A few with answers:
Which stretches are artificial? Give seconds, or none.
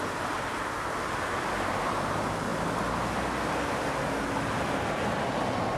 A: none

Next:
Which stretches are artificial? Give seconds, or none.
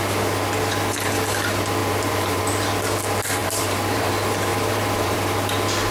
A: 1.8-2.4; 3.4-4.1; 4.5-5.5